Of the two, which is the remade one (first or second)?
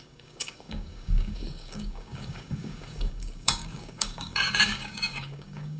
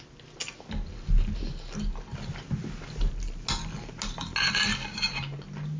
first